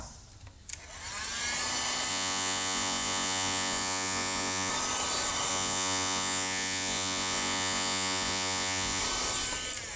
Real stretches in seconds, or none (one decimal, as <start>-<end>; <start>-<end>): 0.0-2.1; 4.7-5.5; 9.0-10.0